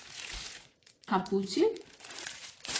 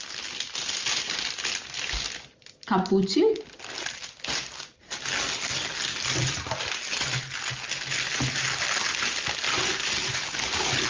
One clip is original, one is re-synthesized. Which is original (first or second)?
second